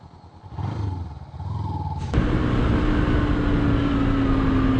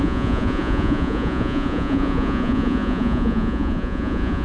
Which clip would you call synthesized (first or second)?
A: second